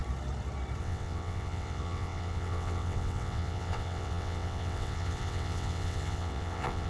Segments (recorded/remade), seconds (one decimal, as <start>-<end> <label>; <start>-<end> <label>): 0.0-0.8 recorded; 0.8-6.9 remade